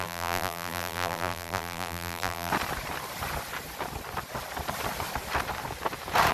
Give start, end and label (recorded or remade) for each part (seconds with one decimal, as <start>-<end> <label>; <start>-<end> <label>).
0.0-2.5 remade; 2.5-6.3 recorded